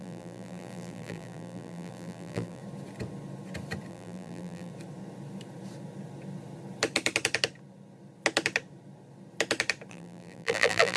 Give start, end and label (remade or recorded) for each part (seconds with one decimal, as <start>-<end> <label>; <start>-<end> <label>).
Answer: 0.0-2.6 remade; 2.6-3.9 recorded; 3.9-4.7 remade; 4.7-9.9 recorded; 9.9-11.0 remade